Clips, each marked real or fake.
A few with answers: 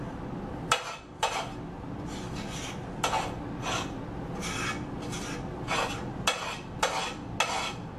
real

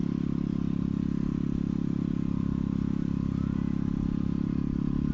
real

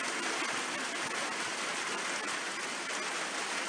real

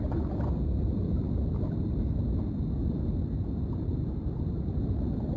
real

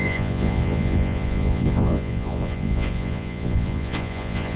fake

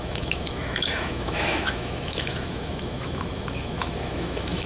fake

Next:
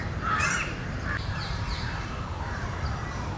fake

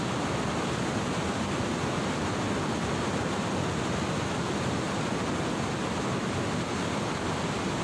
real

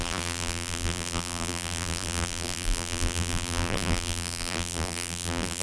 fake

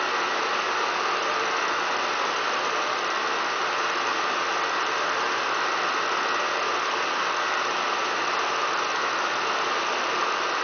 real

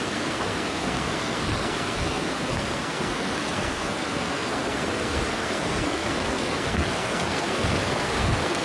fake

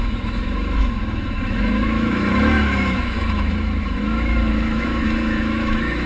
fake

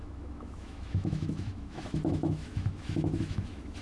fake